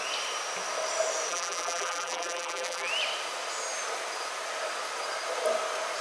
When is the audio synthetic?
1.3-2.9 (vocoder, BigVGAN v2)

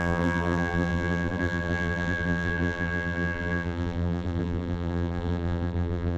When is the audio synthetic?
0.0-6.2 (vocoder, BigVGAN v2)

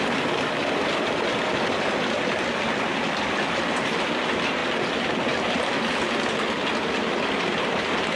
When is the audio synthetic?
none

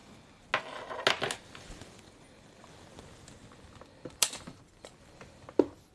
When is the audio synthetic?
4.2-4.9 (vocoder, BigVGAN v2)

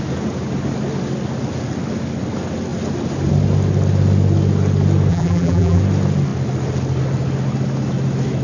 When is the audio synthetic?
5.1-5.8 (vocoder, BigVGAN v2)